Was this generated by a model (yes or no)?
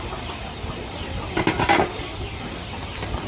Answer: no